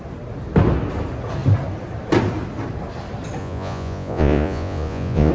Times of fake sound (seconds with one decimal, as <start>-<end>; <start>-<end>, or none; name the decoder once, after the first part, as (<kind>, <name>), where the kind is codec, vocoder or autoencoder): 3.4-5.3 (vocoder, Vocos)